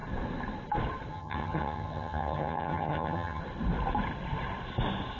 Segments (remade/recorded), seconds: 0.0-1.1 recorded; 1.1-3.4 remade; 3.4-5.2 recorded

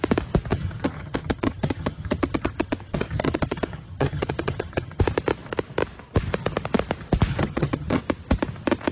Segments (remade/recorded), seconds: 0.0-0.5 recorded; 0.5-5.0 remade; 5.0-7.3 recorded; 7.3-8.0 remade; 8.0-8.9 recorded

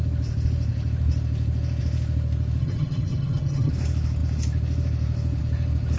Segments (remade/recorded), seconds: 0.0-2.6 recorded; 2.6-3.7 remade; 3.7-6.0 recorded

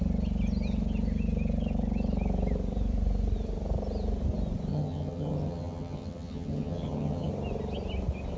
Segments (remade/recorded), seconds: 0.0-4.7 recorded; 4.7-7.3 remade; 7.3-8.4 recorded

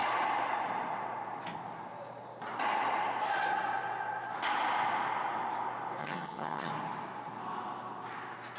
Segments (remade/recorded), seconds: 0.0-6.0 recorded; 6.0-6.7 remade; 6.7-8.6 recorded

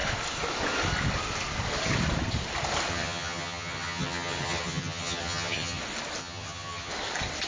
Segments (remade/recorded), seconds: 0.0-2.9 recorded; 2.9-5.8 remade; 5.8-6.2 recorded; 6.2-6.9 remade; 6.9-7.5 recorded